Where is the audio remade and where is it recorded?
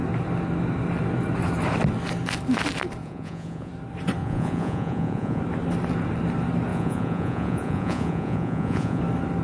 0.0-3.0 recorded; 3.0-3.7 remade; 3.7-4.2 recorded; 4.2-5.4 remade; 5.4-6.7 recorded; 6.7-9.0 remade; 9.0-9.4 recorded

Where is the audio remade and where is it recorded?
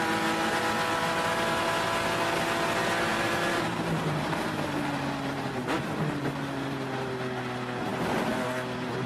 0.0-3.1 recorded; 3.1-7.1 remade; 7.1-9.1 recorded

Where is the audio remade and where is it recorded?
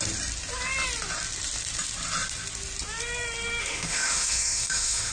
0.0-3.6 recorded; 3.6-5.1 remade